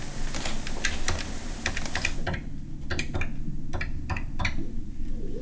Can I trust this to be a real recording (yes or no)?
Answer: yes